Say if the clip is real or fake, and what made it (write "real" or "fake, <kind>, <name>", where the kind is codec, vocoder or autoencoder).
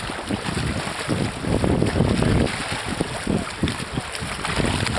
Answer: real